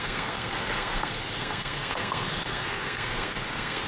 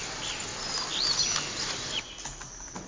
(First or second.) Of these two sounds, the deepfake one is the first